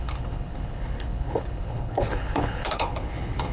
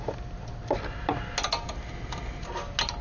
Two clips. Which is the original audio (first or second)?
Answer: second